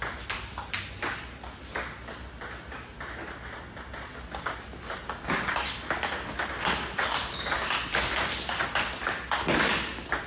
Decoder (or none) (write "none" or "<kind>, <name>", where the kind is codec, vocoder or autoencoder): none